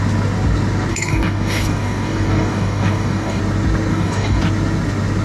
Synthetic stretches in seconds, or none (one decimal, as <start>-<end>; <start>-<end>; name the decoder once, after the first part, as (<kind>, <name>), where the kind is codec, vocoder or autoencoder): 0.9-3.4 (codec, DAC); 3.9-4.4